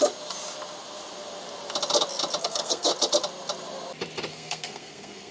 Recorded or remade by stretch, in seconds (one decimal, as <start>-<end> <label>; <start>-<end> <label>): 0.0-2.4 recorded; 2.4-2.9 remade; 2.9-4.3 recorded; 4.3-5.3 remade